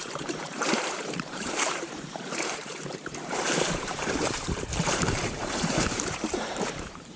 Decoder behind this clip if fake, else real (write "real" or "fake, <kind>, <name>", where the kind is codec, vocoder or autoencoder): fake, vocoder, BigVGAN v2